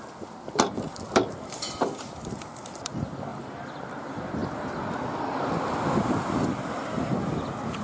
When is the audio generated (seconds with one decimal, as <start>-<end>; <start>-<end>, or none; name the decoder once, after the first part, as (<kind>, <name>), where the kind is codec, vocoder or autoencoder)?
0.0-4.4 (vocoder, BigVGAN v2)